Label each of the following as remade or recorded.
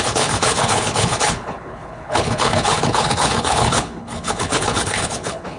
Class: remade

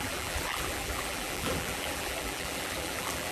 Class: remade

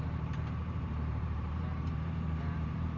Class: remade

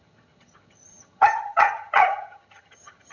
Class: remade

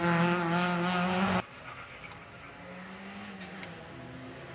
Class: recorded